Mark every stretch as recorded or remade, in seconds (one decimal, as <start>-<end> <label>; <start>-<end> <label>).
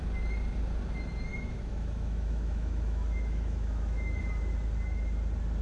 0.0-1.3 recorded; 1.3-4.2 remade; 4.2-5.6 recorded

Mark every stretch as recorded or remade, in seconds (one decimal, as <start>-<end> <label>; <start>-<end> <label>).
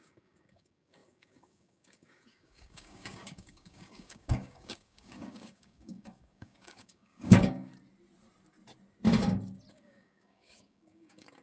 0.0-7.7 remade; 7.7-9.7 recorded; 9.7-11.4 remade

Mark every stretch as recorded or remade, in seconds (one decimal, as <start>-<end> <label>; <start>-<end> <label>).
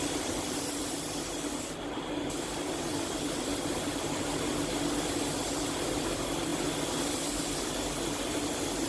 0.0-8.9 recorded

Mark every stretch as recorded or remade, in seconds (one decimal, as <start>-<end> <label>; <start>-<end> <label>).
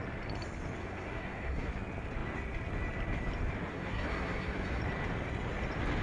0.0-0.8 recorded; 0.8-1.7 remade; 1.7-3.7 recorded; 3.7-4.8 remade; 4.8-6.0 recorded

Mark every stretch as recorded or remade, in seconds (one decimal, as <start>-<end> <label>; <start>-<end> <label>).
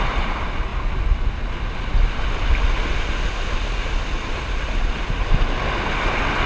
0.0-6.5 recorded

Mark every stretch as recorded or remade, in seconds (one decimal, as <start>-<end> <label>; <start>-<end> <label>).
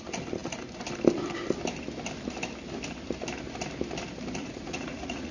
0.0-4.4 recorded; 4.4-5.3 remade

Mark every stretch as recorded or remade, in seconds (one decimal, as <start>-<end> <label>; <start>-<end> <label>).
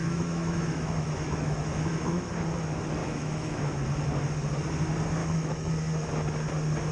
0.0-2.3 remade; 2.3-3.0 recorded; 3.0-3.6 remade; 3.6-5.2 recorded; 5.2-5.7 remade; 5.7-6.9 recorded